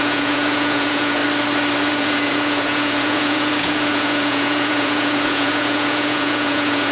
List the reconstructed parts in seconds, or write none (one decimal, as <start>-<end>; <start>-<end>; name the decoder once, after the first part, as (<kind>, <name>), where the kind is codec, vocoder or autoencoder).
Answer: 0.0-1.2 (vocoder, Vocos); 1.9-6.9